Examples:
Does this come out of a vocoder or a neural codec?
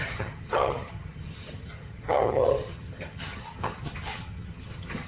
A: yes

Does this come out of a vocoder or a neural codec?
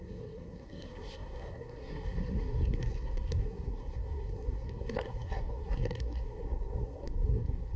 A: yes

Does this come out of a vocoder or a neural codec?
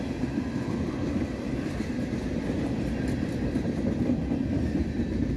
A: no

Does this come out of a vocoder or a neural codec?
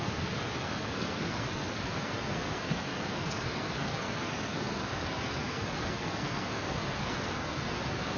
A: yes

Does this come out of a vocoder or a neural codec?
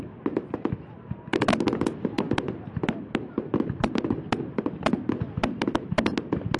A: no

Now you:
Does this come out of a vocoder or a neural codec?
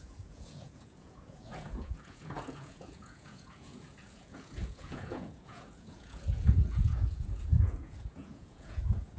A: yes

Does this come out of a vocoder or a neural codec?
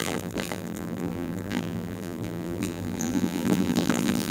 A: yes